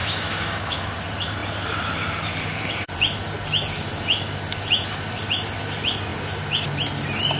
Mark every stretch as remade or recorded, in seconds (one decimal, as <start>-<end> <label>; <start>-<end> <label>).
0.0-0.8 remade; 0.8-7.4 recorded